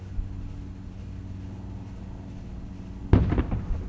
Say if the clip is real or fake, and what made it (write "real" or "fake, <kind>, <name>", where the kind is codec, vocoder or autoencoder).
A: real